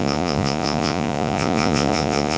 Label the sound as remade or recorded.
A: remade